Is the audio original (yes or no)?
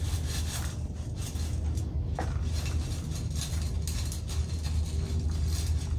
yes